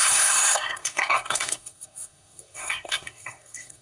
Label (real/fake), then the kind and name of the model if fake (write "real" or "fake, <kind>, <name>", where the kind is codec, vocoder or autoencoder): fake, codec, SNAC